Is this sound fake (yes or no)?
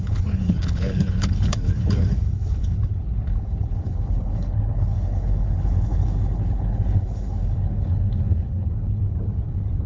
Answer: yes